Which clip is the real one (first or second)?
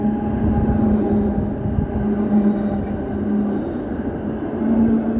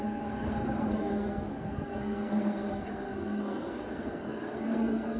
first